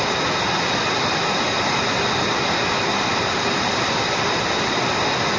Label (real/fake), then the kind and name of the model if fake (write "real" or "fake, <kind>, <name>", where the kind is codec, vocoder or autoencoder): real